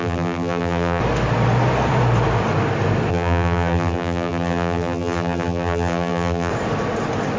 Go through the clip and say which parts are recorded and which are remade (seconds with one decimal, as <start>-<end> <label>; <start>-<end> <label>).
0.0-1.0 remade; 1.0-3.1 recorded; 3.1-6.5 remade; 6.5-7.4 recorded